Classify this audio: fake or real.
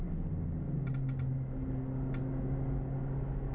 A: real